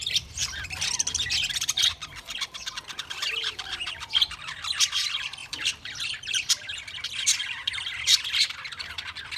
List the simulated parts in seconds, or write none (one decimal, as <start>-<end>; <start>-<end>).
0.0-0.4; 3.0-9.4